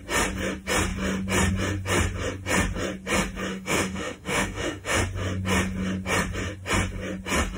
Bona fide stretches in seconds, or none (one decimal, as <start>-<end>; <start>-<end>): 0.0-3.5; 5.0-7.6